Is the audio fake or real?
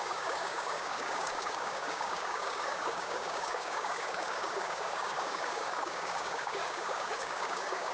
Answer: fake